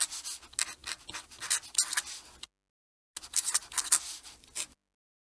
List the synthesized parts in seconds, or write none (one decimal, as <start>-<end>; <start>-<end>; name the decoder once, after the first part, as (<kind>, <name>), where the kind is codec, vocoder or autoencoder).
none